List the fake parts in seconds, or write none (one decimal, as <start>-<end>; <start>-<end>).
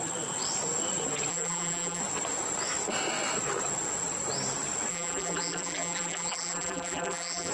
1.3-2.0; 4.9-7.5